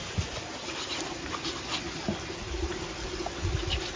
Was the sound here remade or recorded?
recorded